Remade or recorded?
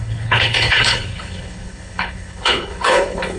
remade